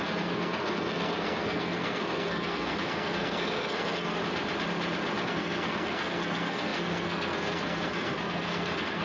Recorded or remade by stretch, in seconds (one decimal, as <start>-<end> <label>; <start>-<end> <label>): 0.0-4.2 remade; 4.2-5.2 recorded; 5.2-9.0 remade